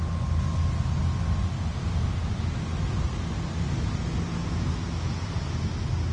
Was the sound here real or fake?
real